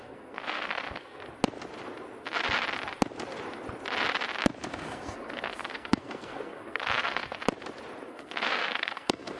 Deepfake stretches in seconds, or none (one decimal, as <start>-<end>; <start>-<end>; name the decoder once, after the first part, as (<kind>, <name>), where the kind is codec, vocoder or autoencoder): 0.0-1.2 (codec, SNAC); 4.7-7.4; 8.1-9.4